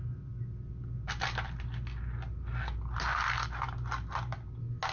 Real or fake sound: real